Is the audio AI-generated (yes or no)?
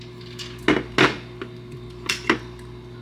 no